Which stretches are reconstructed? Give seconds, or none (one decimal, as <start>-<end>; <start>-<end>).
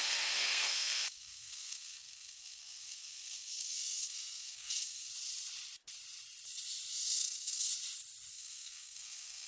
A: 0.0-5.1; 6.9-7.7; 8.3-9.5